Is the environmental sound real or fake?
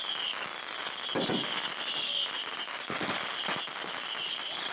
real